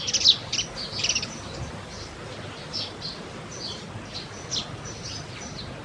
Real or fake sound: real